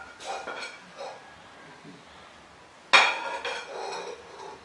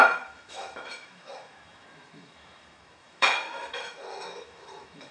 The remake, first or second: second